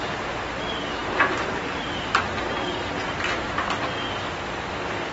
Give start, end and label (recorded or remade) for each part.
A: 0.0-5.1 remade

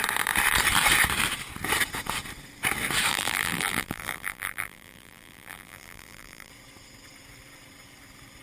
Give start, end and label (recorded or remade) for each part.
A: 0.0-3.1 recorded; 3.1-6.5 remade; 6.5-8.4 recorded

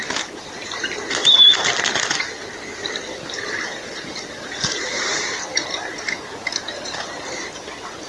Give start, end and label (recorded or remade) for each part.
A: 0.0-1.2 remade; 1.2-3.1 recorded; 3.1-8.1 remade

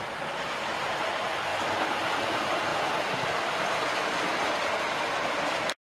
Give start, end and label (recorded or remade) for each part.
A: 0.0-5.8 recorded

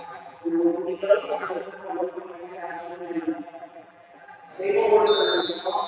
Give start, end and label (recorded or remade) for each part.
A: 0.0-4.5 remade; 4.5-5.4 recorded; 5.4-5.9 remade

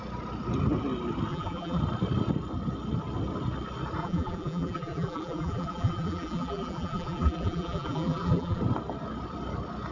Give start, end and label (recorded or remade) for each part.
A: 0.0-1.3 recorded; 1.3-1.8 remade; 1.8-4.0 recorded; 4.0-8.6 remade; 8.6-9.9 recorded

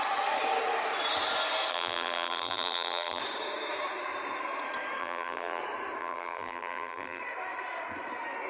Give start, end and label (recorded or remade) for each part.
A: 0.0-1.7 recorded; 1.7-3.2 remade; 3.2-5.0 recorded; 5.0-5.6 remade; 5.6-6.0 recorded; 6.0-7.2 remade; 7.2-8.5 recorded